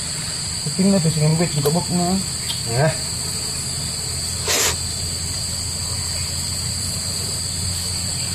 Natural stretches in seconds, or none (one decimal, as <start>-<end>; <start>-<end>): 0.0-8.3